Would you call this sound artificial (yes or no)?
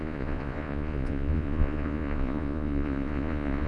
yes